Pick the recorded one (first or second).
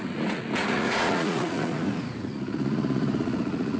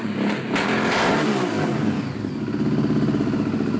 second